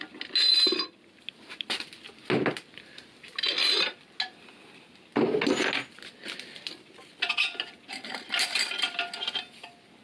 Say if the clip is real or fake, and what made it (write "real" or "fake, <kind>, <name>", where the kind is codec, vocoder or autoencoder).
real